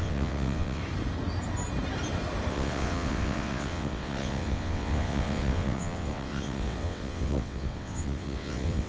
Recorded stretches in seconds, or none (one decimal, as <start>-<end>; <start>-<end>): 0.8-2.5